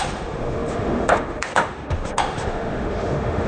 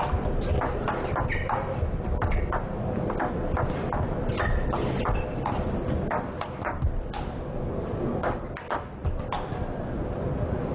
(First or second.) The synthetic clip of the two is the first